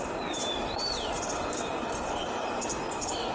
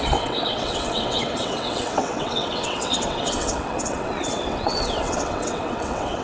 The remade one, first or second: second